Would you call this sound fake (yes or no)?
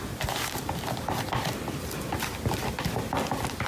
no